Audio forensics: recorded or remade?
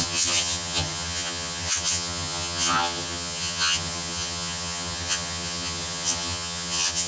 remade